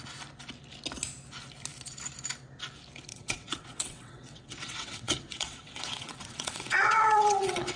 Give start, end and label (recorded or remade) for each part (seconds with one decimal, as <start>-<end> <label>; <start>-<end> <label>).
0.0-3.1 recorded; 3.1-7.8 remade